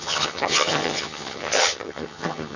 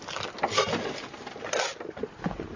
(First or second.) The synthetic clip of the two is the first